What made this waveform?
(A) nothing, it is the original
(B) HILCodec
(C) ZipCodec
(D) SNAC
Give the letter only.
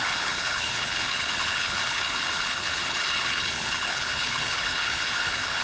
B